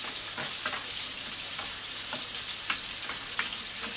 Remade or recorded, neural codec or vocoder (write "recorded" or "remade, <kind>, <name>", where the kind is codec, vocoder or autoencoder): remade, vocoder, BigVGAN v2